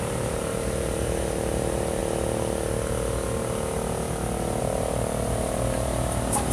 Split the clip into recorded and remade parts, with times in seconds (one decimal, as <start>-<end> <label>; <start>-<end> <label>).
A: 0.0-2.0 remade; 2.0-4.6 recorded; 4.6-6.5 remade